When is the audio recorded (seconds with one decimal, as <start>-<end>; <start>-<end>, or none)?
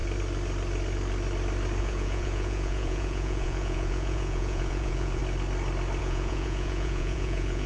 0.0-1.8; 5.2-6.0